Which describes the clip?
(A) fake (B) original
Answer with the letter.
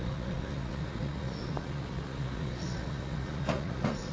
A